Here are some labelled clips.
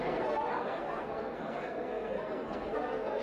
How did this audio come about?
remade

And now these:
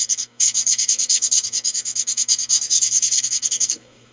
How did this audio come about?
remade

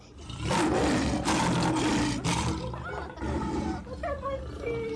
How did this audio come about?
recorded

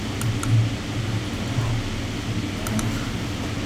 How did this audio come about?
recorded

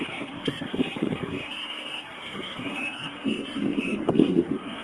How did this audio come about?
remade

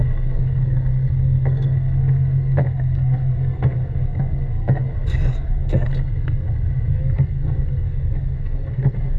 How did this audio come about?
remade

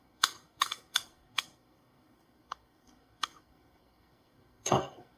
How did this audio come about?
remade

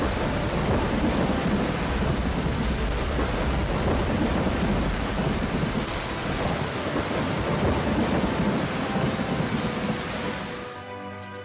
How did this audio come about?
recorded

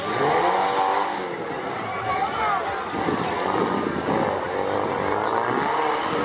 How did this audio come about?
recorded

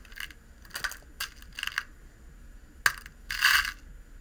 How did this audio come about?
recorded